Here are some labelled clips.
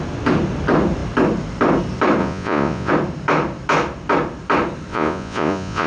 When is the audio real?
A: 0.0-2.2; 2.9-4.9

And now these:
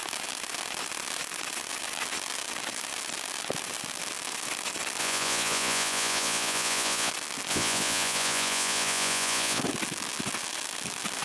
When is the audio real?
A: 0.0-5.0; 7.1-7.5; 9.6-11.2

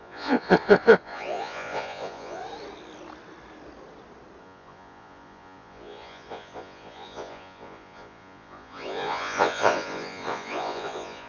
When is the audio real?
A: 2.4-4.4

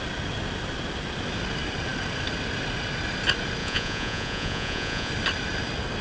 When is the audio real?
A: 0.0-3.6; 5.1-6.0

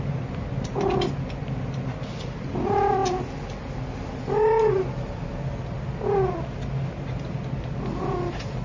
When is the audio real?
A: 0.0-8.6

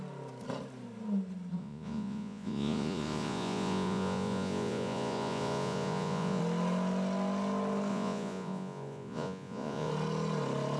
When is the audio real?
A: 0.0-1.6; 6.4-7.9; 9.9-10.8

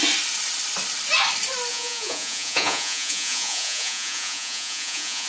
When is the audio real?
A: 0.0-1.7